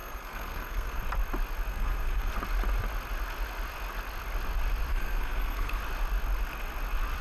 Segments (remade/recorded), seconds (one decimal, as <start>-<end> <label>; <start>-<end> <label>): 0.0-1.0 remade; 1.0-1.7 recorded; 1.7-2.3 remade; 2.3-4.9 recorded; 4.9-5.8 remade; 5.8-7.2 recorded